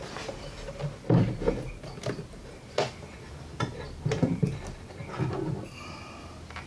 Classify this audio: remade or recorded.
recorded